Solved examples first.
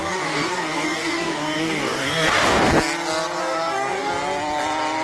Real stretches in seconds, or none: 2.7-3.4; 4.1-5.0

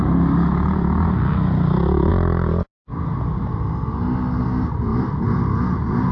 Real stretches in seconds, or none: 0.0-6.1

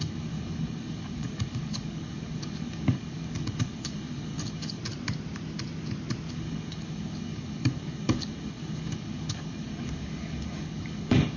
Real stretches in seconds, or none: 4.8-6.3

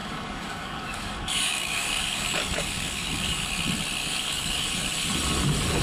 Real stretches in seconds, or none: 3.5-4.0; 4.8-5.8

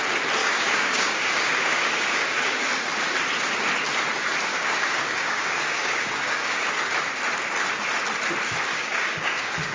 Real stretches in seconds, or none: 0.0-0.4; 2.7-4.5; 6.7-8.7

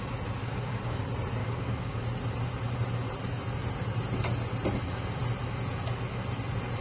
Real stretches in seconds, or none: 0.0-0.4; 1.0-1.4; 2.0-6.8